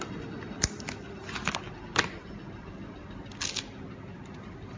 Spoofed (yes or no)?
no